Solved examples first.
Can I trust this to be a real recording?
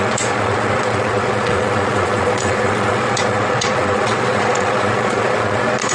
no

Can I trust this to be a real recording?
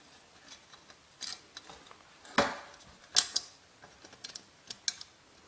yes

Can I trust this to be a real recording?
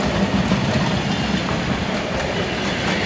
yes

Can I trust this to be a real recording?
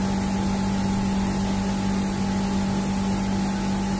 yes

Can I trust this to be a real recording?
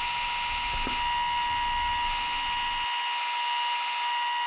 yes